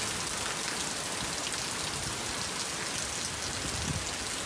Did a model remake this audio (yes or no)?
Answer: no